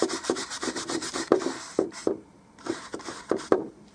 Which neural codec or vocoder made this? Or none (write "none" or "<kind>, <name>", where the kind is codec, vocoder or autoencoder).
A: vocoder, BigVGAN v2